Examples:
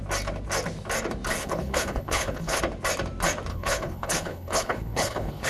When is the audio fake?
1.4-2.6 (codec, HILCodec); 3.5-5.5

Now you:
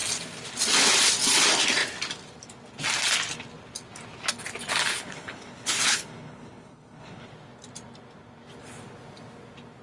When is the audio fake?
4.9-7.3 (codec, HILCodec)

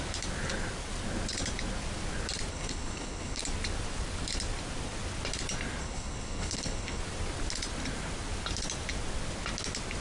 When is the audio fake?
2.5-3.4 (codec, HILCodec); 5.8-7.0

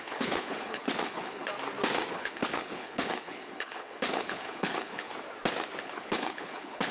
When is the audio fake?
0.0-1.5 (codec, HILCodec); 2.1-5.1; 5.8-6.9

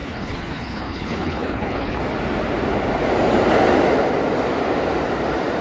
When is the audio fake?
0.0-2.0 (codec, HILCodec)

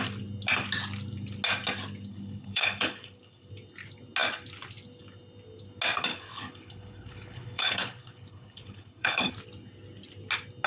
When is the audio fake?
2.1-3.5 (codec, HILCodec); 6.1-9.3

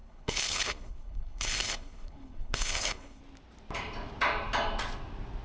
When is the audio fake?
0.0-3.2 (codec, HILCodec)

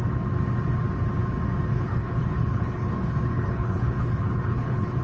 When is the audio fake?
1.7-5.0 (codec, HILCodec)